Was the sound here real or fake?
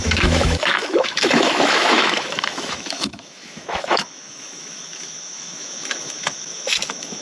fake